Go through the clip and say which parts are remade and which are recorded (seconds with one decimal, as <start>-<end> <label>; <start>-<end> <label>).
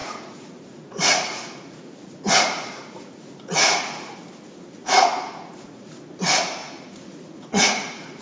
0.0-4.2 remade; 4.2-4.8 recorded; 4.8-6.0 remade; 6.0-6.6 recorded; 6.6-8.2 remade